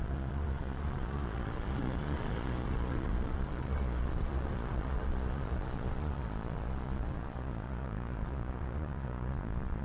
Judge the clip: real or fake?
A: fake